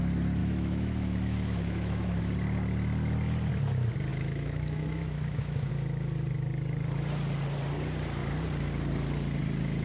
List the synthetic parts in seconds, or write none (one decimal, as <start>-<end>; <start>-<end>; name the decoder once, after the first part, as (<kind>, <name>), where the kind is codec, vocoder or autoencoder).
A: 0.4-2.2 (autoencoder, DAC-VAE); 4.1-5.7